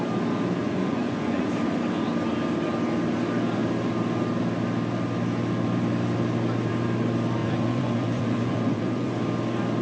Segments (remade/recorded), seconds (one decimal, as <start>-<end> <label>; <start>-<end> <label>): 0.0-0.6 recorded; 0.6-1.5 remade; 1.5-7.4 recorded; 7.4-9.2 remade; 9.2-9.8 recorded